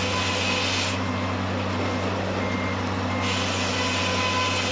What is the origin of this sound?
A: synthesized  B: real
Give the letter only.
B